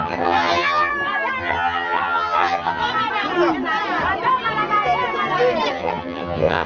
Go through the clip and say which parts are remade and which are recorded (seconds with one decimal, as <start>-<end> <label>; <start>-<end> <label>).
0.0-0.9 remade; 0.9-1.4 recorded; 1.4-2.8 remade; 2.8-5.7 recorded; 5.7-6.7 remade